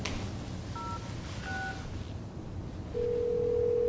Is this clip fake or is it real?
real